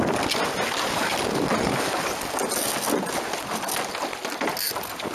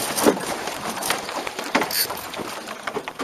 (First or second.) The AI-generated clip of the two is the second